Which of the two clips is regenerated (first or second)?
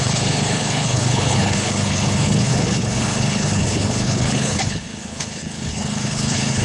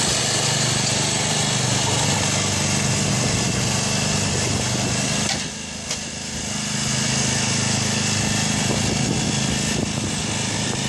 first